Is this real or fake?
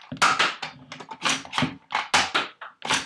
real